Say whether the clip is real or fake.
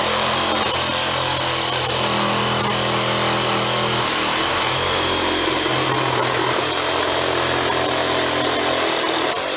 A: real